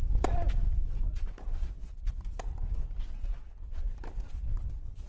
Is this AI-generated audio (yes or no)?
no